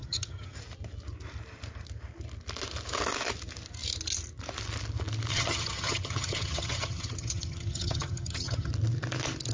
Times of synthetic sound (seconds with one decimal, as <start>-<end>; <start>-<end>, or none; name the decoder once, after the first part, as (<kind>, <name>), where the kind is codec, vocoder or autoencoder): 0.0-0.6 (vocoder, HiFi-GAN); 5.3-8.7